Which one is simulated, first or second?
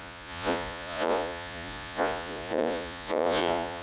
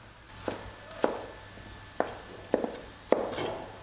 first